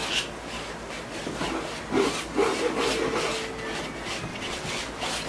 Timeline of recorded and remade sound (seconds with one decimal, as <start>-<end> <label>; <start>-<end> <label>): 0.0-4.3 recorded; 4.3-4.8 remade; 4.8-5.3 recorded

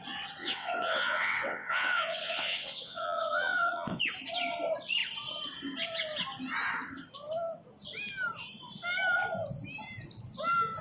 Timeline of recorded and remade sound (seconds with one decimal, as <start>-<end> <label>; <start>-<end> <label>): 0.0-0.4 recorded; 0.4-4.0 remade; 4.0-10.8 recorded